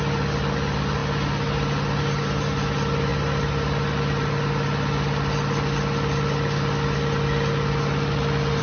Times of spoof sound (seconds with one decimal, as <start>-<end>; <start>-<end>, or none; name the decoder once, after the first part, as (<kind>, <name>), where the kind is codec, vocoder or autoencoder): none